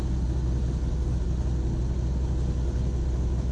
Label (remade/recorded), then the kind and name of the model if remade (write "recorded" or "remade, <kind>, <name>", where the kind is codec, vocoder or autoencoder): recorded